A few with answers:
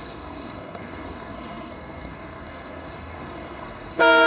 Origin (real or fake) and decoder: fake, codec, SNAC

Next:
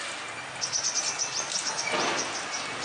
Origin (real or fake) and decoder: real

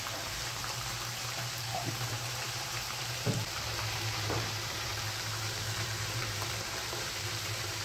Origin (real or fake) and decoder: fake, vocoder, BigVGAN v2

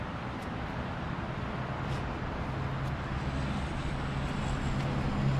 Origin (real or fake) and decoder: real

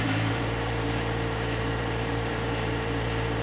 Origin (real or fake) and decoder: fake, vocoder, BigVGAN v2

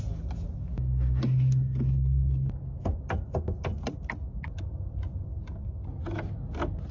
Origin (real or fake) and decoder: real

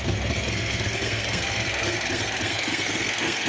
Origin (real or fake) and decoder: fake, codec, SNAC